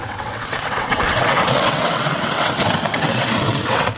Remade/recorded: remade